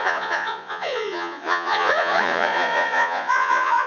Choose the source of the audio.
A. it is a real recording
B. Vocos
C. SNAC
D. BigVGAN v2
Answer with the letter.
B